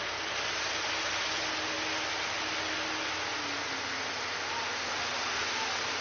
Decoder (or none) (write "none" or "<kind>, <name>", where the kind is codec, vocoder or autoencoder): none